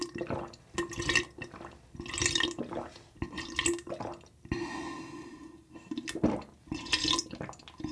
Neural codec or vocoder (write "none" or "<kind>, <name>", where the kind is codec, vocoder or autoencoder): none